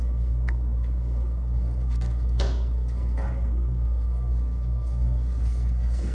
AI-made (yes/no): yes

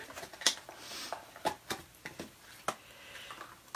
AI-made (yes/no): no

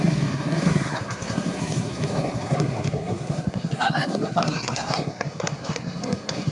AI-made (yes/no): yes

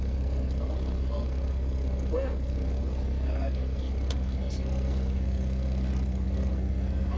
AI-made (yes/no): yes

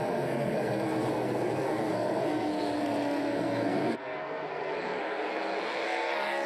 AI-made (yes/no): yes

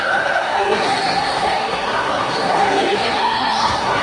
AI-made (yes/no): yes